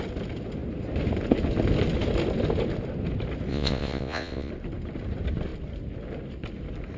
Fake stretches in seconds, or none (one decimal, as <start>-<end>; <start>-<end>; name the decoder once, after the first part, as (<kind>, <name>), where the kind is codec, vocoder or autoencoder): 3.5-4.5 (vocoder, Vocos)